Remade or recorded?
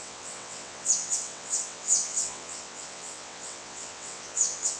remade